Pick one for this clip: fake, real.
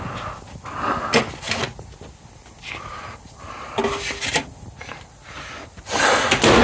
real